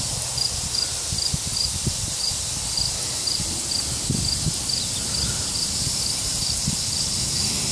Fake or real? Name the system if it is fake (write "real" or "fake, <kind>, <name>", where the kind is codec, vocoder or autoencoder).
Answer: real